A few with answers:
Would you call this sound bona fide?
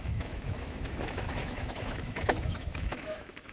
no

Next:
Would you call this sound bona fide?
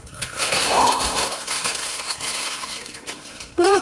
no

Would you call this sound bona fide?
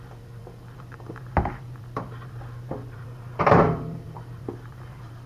no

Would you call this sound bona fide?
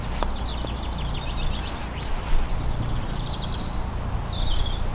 yes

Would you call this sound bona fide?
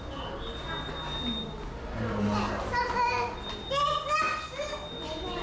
yes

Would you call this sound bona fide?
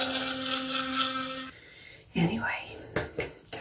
yes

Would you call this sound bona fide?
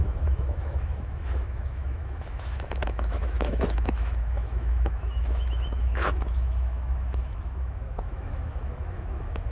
no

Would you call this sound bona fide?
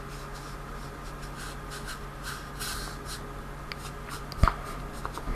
yes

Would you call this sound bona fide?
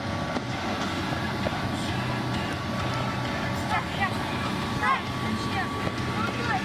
yes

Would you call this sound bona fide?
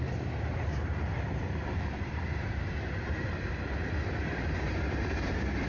no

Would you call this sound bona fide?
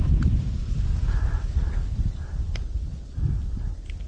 yes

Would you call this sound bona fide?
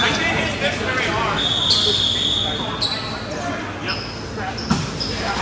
yes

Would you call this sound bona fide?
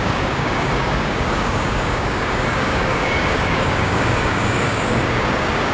no